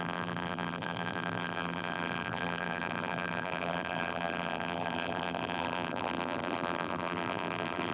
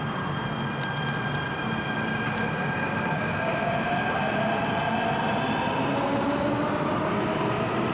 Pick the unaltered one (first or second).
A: second